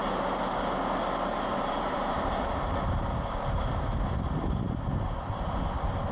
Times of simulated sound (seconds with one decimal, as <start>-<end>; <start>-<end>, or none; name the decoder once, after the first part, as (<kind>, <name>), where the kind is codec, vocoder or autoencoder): 1.5-5.2 (vocoder, BigVGAN v2)